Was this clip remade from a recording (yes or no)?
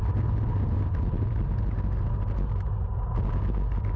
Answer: no